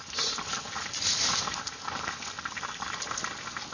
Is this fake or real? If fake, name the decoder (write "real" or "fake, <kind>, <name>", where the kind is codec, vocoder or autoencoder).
real